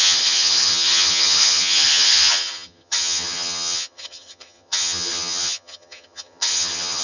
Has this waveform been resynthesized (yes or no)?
yes